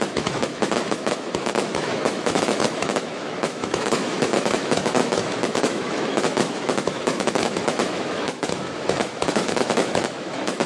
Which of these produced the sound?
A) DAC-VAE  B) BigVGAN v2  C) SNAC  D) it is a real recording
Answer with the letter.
A